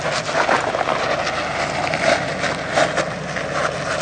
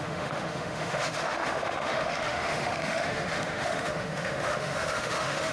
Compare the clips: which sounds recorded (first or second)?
first